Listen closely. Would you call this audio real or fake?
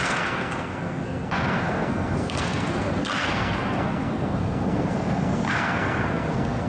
fake